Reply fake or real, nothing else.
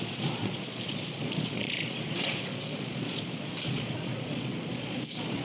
fake